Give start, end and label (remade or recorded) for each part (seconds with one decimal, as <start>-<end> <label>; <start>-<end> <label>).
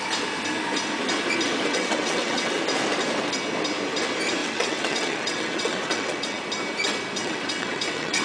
0.0-1.7 recorded; 1.7-2.6 remade; 2.6-4.4 recorded; 4.4-6.4 remade; 6.4-7.2 recorded; 7.2-8.2 remade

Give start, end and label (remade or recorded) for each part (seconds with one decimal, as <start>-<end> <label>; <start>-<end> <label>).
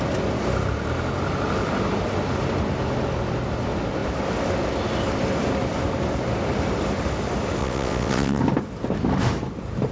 0.0-7.6 recorded; 7.6-8.4 remade; 8.4-9.9 recorded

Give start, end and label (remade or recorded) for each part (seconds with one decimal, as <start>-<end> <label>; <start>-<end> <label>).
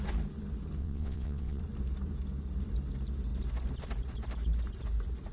0.0-0.8 recorded; 0.8-1.6 remade; 1.6-5.3 recorded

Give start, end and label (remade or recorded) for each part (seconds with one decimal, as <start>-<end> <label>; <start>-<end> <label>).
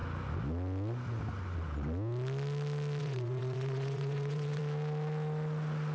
0.0-3.0 recorded; 3.0-4.6 remade; 4.6-5.9 recorded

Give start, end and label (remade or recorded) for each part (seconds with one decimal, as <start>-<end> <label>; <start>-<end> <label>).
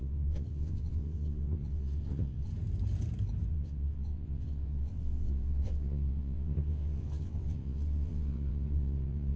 0.0-2.5 remade; 2.5-3.5 recorded; 3.5-9.4 remade